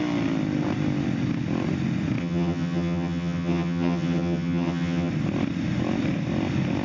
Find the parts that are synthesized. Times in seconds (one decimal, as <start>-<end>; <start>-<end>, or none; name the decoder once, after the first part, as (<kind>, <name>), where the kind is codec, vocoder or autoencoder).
2.2-5.1 (vocoder, HiFi-GAN)